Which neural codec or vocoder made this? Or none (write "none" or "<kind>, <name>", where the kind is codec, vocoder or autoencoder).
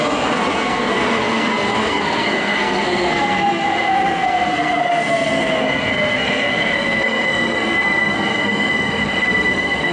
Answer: codec, SNAC